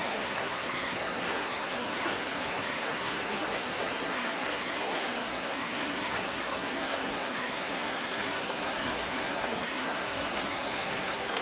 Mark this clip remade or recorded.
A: remade